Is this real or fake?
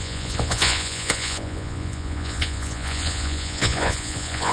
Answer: fake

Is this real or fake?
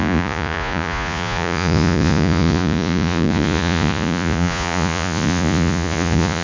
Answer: fake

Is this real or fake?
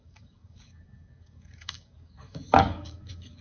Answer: fake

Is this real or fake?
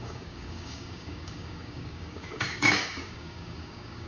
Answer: fake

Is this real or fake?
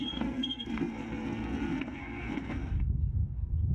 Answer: fake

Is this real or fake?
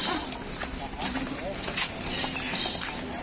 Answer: real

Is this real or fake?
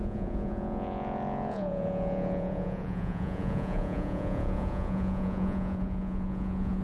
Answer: fake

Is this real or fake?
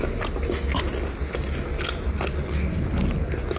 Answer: real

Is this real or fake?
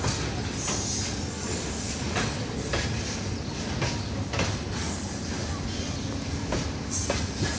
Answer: real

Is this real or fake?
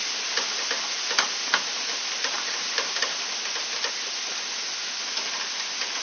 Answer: real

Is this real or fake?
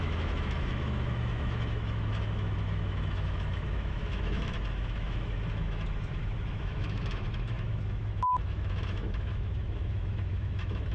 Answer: fake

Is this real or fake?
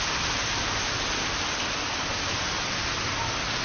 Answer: real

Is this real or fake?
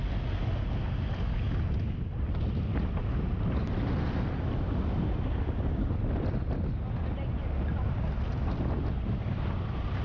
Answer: real